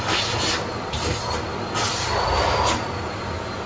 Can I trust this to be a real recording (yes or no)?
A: yes